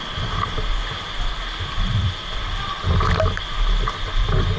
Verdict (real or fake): real